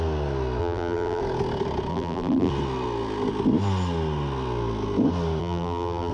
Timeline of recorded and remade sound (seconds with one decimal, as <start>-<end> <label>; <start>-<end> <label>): 0.0-0.6 recorded; 0.6-1.2 remade; 1.2-1.9 recorded; 1.9-2.5 remade; 2.5-5.4 recorded; 5.4-6.1 remade